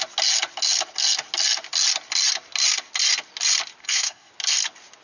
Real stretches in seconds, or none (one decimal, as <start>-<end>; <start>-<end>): 0.0-3.8; 4.3-5.0